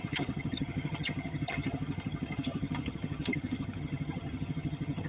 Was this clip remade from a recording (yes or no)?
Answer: yes